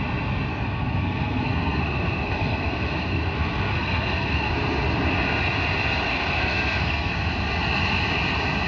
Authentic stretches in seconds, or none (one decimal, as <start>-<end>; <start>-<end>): 0.0-0.5; 4.5-6.1; 7.1-8.7